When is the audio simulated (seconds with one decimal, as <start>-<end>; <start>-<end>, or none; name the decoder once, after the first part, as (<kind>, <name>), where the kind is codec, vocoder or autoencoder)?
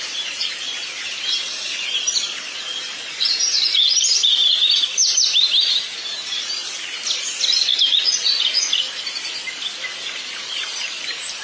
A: 0.0-6.6 (vocoder, BigVGAN v2); 10.0-11.4